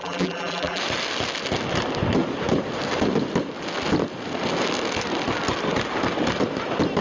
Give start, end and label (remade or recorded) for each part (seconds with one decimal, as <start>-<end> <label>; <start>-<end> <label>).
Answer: 0.0-0.8 remade; 0.8-7.0 recorded